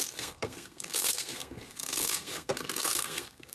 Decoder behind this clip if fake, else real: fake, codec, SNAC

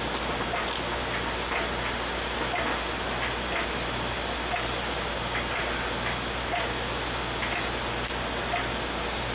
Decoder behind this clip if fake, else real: real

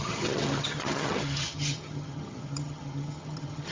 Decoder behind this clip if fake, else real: fake, vocoder, HiFi-GAN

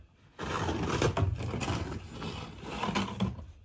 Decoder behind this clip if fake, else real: real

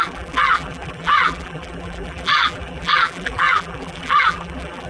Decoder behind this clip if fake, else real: fake, vocoder, BigVGAN v2